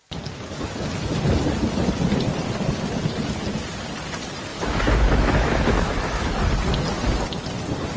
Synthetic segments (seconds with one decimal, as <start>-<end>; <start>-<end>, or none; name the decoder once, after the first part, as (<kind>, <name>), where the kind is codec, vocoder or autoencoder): 4.5-6.3 (autoencoder, DAC-VAE)